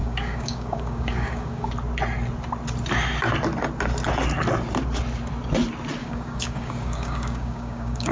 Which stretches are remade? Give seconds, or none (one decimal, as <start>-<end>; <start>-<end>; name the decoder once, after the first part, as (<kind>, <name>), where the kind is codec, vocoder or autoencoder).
0.0-1.7 (codec, DAC); 6.0-8.1